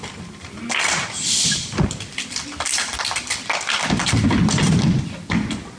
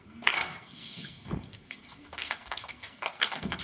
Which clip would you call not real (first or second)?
second